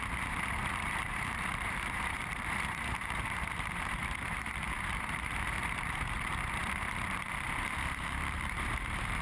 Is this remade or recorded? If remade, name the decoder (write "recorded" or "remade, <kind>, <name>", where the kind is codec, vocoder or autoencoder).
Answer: remade, vocoder, BigVGAN v2